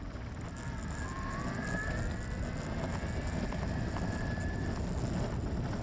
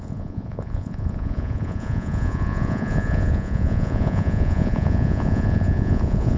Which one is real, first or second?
first